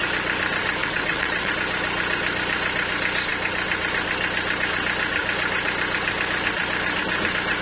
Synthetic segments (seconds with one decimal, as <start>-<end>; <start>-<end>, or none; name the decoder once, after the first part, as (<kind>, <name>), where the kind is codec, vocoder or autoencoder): 0.8-1.5 (vocoder, WaveNeXt)